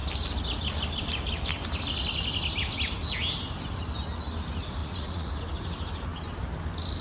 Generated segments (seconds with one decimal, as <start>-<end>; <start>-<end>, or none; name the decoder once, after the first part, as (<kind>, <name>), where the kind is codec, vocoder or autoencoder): 4.8-5.4 (vocoder, Vocos)